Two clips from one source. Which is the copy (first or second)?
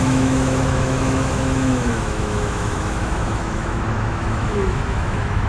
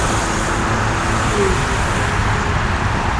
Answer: first